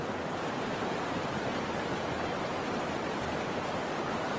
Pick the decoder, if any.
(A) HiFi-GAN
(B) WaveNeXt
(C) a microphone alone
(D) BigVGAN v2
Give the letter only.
D